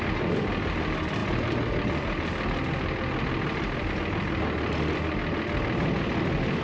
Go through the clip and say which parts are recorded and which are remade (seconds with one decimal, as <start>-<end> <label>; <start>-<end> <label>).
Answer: 0.0-6.6 recorded